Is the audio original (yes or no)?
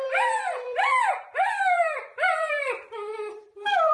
no